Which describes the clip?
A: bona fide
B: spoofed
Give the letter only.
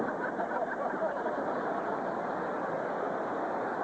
A